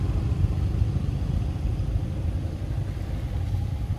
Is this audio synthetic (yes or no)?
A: no